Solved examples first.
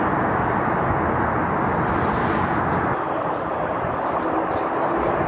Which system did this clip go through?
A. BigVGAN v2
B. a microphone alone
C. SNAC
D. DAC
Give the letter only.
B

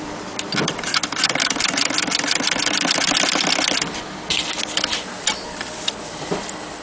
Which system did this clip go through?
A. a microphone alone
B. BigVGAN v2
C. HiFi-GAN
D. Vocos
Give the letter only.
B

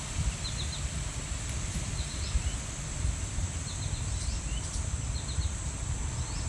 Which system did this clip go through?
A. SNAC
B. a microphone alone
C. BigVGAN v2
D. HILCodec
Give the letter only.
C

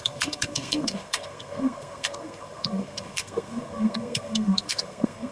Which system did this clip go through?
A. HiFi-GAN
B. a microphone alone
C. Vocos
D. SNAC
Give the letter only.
D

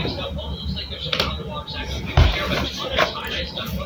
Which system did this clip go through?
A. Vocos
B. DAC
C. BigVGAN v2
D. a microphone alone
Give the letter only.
D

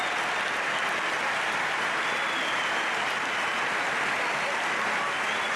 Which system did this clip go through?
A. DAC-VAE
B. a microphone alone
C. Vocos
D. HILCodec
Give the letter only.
B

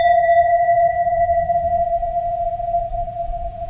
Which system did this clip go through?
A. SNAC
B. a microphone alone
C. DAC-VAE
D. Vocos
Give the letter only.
D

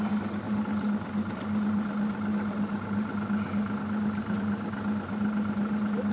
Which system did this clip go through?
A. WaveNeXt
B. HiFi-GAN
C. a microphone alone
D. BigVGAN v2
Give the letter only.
C